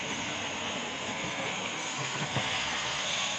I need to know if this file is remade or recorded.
remade